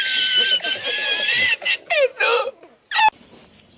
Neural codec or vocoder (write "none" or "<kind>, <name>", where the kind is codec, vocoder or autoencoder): none